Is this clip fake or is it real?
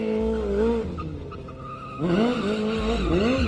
real